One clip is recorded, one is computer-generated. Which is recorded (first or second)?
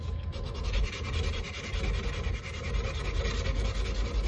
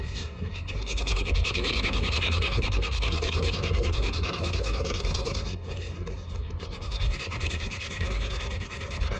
first